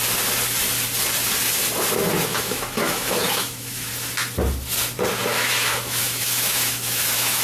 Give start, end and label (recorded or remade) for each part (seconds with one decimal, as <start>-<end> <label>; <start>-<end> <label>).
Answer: 0.0-2.3 recorded; 2.3-3.9 remade; 3.9-5.3 recorded; 5.3-7.4 remade